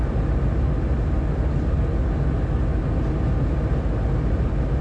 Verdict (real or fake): real